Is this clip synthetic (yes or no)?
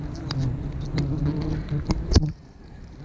no